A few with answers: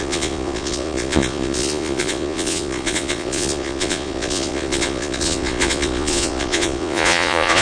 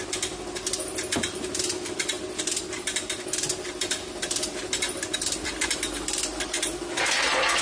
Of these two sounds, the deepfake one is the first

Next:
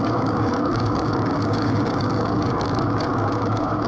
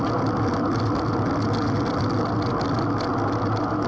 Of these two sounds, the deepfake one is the first